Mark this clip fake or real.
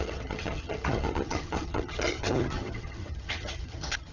fake